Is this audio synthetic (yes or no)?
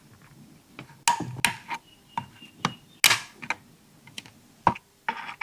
no